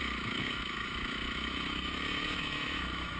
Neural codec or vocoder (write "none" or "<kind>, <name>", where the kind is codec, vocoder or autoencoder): autoencoder, DAC-VAE